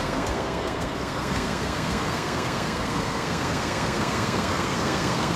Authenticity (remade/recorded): remade